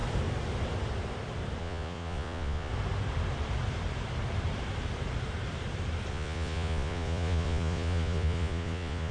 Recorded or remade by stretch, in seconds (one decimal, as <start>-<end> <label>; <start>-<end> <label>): 0.0-1.6 recorded; 1.6-2.7 remade; 2.7-6.1 recorded; 6.1-9.1 remade